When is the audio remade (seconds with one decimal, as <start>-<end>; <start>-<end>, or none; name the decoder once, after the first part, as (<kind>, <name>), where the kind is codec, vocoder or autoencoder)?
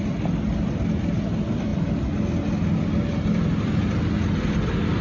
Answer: none